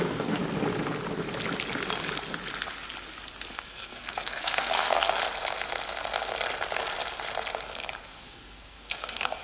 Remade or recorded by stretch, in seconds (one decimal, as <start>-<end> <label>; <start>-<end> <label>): 0.0-0.4 remade; 0.4-3.5 recorded; 3.5-5.2 remade; 5.2-8.0 recorded; 8.0-9.4 remade